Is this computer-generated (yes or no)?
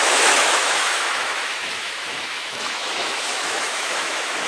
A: yes